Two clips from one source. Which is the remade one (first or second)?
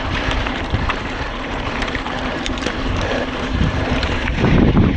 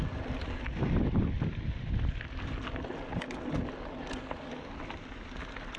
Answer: first